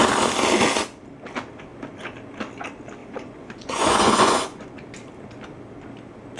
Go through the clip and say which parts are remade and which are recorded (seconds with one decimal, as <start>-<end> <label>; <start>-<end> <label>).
0.0-3.0 recorded; 3.0-4.7 remade; 4.7-6.4 recorded